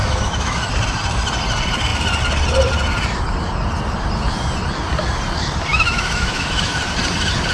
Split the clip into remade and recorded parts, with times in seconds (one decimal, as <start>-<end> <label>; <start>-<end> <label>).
0.0-0.7 remade; 0.7-5.7 recorded; 5.7-6.8 remade; 6.8-7.5 recorded